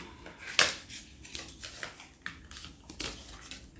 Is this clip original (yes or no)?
yes